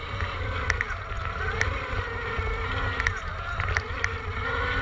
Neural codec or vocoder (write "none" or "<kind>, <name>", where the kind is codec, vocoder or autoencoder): none